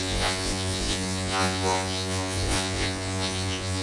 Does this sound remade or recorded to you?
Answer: remade